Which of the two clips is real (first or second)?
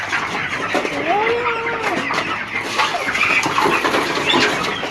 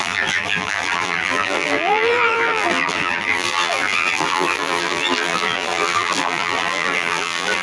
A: first